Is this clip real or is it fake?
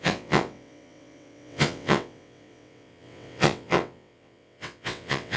fake